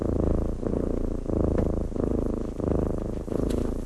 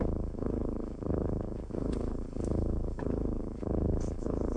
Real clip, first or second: first